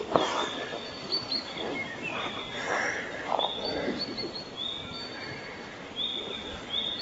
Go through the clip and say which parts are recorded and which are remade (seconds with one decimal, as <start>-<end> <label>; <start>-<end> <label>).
0.0-7.0 recorded